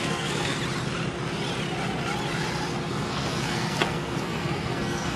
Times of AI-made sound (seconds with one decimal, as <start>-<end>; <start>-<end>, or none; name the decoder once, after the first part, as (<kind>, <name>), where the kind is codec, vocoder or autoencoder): 0.0-0.6 (codec, SNAC); 2.9-5.2